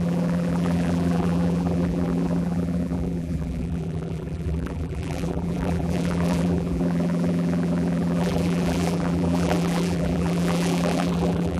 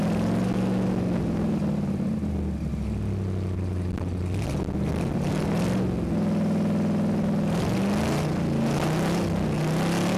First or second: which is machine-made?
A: first